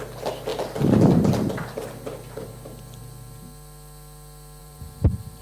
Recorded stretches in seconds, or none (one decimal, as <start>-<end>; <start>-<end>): 0.0-4.6